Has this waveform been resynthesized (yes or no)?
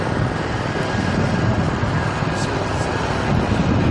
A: no